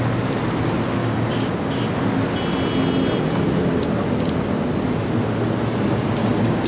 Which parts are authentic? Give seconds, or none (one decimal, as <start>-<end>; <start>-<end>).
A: 0.0-1.0; 1.9-6.2